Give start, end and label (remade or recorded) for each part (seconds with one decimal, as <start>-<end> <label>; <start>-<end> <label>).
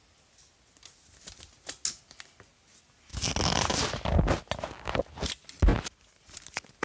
0.0-6.8 recorded